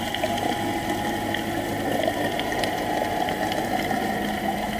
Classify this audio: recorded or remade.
recorded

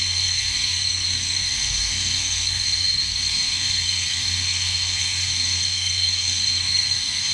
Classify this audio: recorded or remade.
remade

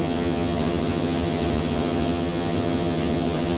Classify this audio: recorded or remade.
remade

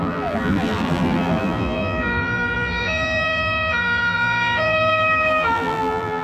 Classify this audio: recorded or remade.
remade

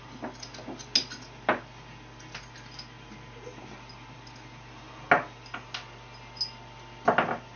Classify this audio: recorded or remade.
recorded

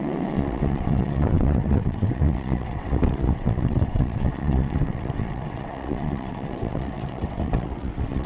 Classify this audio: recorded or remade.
remade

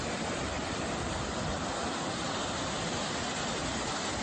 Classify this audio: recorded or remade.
recorded